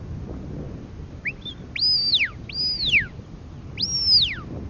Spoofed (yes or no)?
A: no